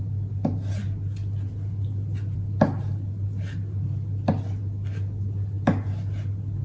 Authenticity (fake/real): real